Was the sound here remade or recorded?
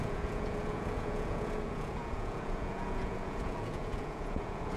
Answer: remade